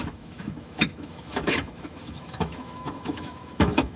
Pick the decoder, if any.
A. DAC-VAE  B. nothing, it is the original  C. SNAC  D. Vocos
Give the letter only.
A